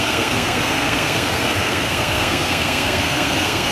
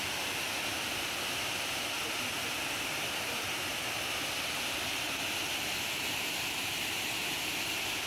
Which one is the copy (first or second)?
first